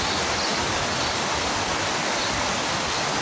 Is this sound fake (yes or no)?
no